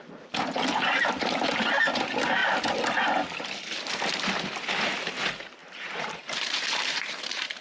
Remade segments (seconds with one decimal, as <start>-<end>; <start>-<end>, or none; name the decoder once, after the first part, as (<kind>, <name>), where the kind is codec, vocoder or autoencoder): 5.6-7.6 (vocoder, BigVGAN v2)